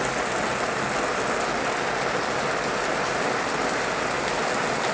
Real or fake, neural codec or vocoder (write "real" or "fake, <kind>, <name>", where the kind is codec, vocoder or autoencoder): real